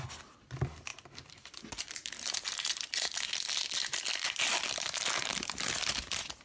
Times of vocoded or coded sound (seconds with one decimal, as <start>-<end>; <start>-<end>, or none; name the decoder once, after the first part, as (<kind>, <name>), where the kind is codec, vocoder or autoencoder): none